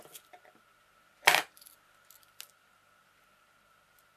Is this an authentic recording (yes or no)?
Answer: yes